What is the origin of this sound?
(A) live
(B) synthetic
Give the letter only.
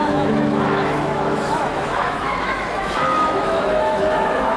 B